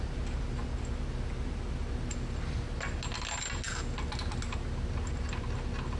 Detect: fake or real real